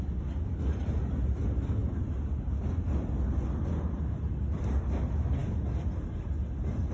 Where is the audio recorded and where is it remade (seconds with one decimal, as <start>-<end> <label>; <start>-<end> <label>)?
0.0-6.9 recorded